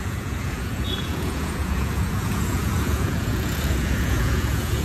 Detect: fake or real fake